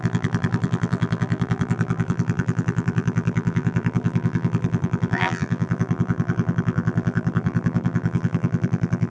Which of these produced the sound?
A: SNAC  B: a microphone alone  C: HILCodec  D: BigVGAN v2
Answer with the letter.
D